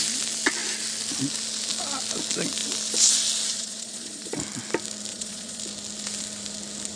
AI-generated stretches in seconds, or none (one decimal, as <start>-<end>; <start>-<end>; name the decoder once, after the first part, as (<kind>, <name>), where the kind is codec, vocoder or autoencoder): 3.5-4.4 (vocoder, Vocos); 5.1-5.6